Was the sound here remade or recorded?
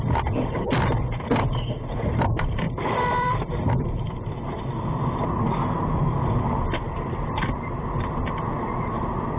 remade